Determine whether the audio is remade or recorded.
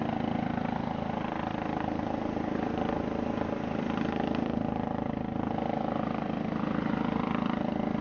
recorded